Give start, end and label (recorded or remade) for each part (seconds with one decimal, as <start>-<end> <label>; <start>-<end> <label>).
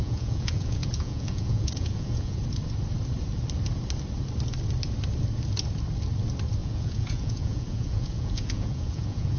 0.0-2.4 remade; 2.4-6.6 recorded; 6.6-9.4 remade